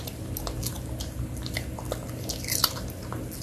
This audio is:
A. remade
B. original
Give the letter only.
B